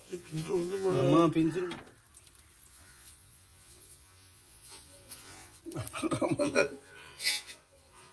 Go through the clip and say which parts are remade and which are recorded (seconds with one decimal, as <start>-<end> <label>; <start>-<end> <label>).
0.0-1.0 remade; 1.0-2.7 recorded; 2.7-5.6 remade; 5.6-6.4 recorded; 6.4-8.1 remade